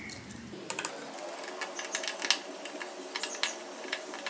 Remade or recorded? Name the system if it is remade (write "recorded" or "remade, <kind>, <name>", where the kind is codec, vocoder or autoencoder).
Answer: recorded